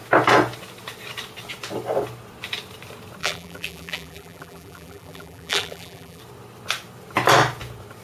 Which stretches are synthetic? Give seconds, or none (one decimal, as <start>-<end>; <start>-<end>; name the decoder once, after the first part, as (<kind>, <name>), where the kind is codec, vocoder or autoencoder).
3.2-6.2 (vocoder, BigVGAN v2)